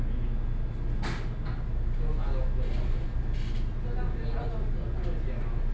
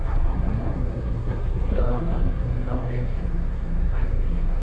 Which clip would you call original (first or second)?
first